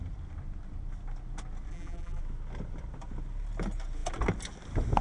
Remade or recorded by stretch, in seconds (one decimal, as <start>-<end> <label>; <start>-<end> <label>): 0.0-1.7 recorded; 1.7-2.2 remade; 2.2-5.0 recorded